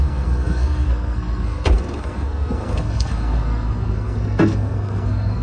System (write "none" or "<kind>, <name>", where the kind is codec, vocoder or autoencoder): codec, SNAC